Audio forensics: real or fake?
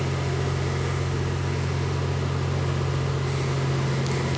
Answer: real